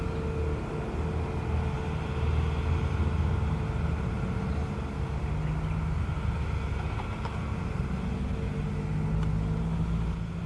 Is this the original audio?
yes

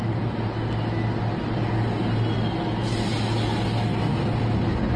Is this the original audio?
yes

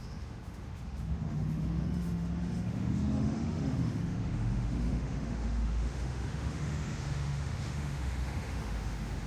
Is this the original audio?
no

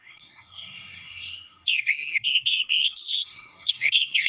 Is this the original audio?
no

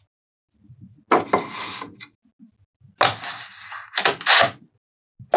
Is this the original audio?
yes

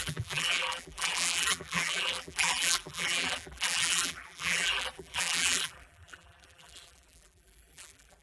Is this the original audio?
no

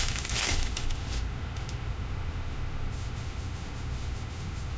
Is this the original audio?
no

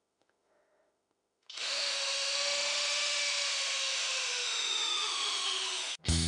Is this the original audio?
no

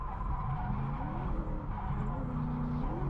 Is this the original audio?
yes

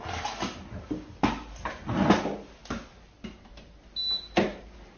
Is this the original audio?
yes